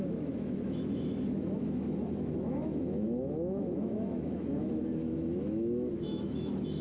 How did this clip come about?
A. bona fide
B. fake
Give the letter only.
B